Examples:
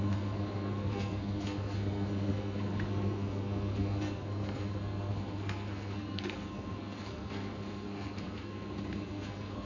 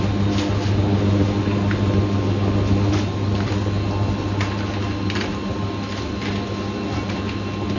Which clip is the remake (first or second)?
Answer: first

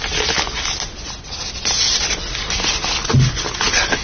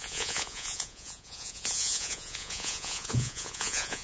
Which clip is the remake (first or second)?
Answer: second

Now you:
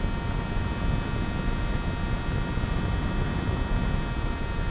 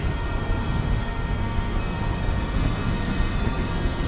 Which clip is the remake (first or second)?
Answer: second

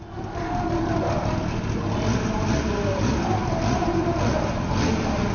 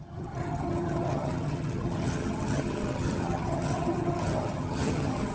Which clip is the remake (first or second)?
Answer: second